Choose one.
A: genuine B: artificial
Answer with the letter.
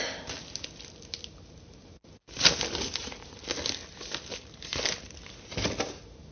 A